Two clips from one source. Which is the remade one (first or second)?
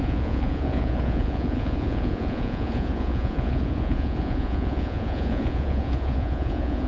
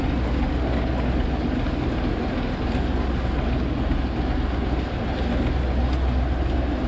first